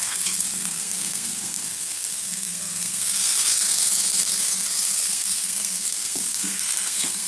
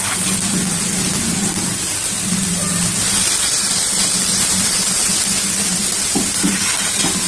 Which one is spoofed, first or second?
first